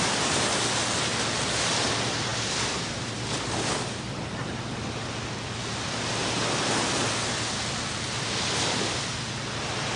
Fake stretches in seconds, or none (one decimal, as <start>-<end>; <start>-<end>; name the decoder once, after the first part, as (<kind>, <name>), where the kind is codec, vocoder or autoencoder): none